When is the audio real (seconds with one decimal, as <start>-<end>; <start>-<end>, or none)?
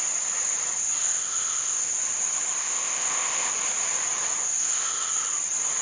0.0-1.0; 1.9-2.6; 3.5-4.6; 5.1-5.8